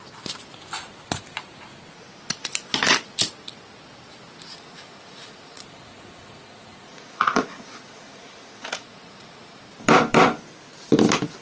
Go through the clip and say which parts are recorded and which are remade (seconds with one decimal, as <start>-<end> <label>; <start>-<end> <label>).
0.0-4.5 recorded; 4.5-9.6 remade; 9.6-11.4 recorded